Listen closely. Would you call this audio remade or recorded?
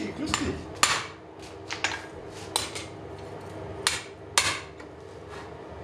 recorded